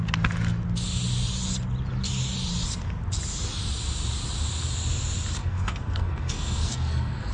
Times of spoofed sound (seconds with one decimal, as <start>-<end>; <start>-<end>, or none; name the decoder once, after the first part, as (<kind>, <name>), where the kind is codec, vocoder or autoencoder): 5.4-7.3 (codec, SNAC)